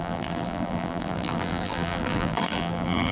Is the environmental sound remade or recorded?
remade